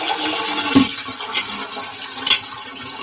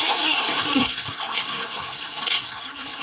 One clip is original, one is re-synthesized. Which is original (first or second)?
first